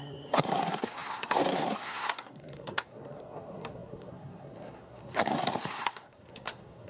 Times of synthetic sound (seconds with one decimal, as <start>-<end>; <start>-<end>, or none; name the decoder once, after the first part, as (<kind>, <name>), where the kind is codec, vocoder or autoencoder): 0.0-6.9 (codec, SNAC)